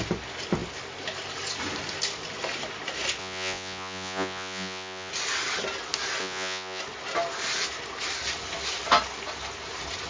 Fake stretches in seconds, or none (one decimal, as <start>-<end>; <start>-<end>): 3.2-5.1; 6.2-6.8